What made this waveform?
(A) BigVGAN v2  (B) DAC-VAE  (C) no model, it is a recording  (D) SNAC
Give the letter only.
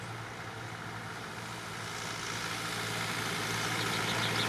C